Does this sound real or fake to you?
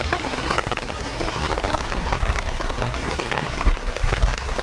fake